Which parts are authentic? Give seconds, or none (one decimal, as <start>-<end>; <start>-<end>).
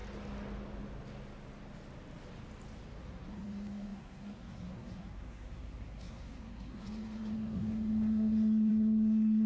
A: 0.0-3.0